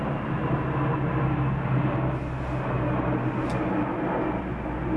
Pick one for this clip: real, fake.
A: real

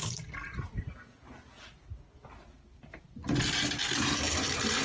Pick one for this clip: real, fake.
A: real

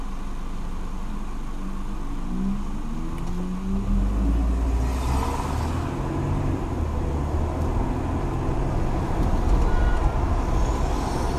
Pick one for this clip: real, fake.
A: real